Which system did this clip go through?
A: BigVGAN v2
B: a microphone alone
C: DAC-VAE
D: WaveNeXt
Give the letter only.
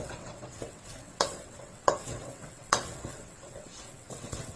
D